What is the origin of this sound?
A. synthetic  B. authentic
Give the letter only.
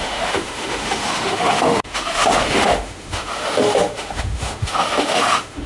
A